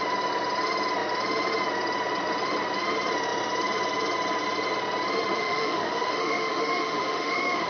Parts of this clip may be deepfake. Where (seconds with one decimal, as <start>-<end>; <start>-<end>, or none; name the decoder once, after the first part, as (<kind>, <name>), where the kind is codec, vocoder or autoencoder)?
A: 5.4-7.7 (autoencoder, DAC-VAE)